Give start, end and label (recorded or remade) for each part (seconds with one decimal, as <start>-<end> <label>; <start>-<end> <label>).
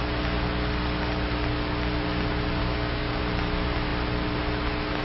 0.0-2.6 recorded; 2.6-3.2 remade; 3.2-5.0 recorded